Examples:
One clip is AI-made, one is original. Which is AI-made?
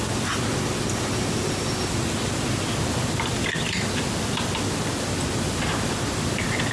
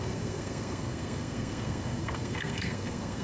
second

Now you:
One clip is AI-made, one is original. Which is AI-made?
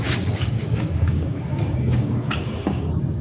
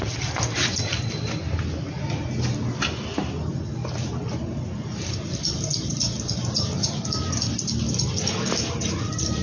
first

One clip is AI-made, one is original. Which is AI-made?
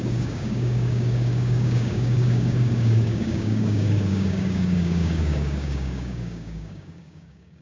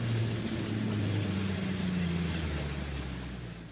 first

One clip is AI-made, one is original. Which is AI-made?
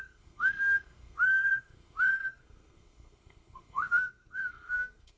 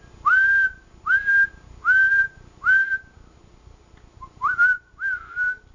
first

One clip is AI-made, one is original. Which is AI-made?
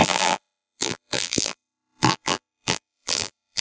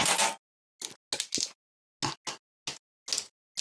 first